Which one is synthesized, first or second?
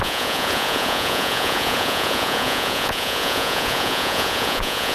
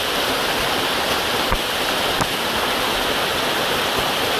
first